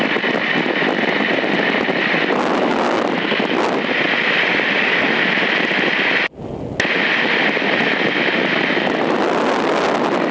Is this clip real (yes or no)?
yes